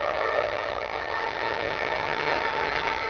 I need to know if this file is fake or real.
fake